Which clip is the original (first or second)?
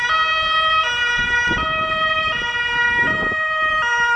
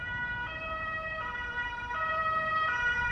first